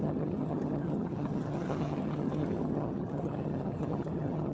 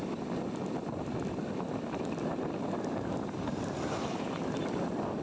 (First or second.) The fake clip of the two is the first